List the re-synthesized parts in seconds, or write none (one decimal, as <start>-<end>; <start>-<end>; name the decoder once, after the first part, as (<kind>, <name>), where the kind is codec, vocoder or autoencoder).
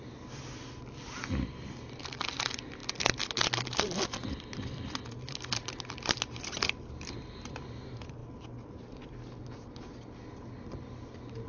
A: none